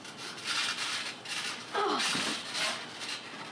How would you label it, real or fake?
real